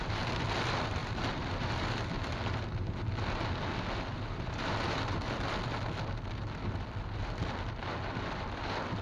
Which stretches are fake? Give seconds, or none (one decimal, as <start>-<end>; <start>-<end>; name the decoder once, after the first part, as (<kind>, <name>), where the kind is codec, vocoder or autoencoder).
none